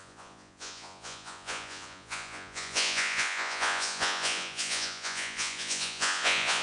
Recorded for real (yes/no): no